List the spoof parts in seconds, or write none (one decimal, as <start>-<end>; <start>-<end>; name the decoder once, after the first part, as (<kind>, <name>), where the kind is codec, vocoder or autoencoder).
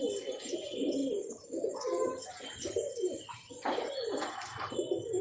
none